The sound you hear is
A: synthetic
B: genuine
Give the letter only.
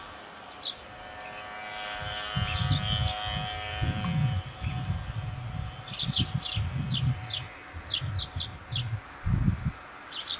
B